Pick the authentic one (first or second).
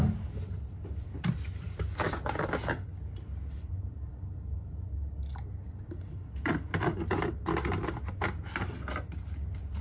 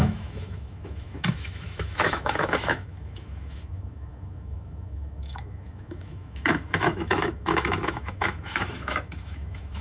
first